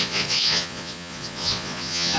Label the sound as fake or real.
fake